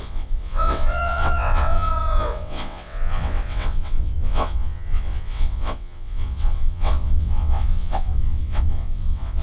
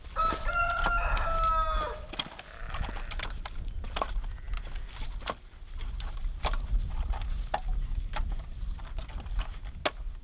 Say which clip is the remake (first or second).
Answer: first